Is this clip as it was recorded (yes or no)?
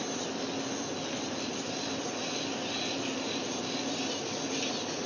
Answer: yes